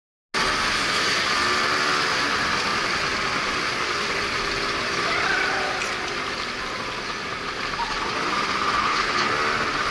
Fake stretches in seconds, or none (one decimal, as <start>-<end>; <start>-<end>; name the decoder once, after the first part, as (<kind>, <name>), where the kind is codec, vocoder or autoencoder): 8.8-9.3 (codec, HILCodec)